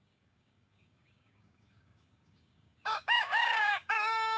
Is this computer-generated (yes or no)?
yes